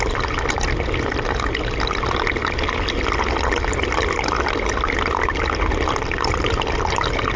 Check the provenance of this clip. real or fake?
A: real